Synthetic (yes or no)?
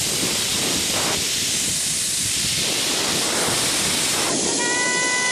no